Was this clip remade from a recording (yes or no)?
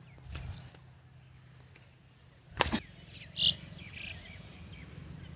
no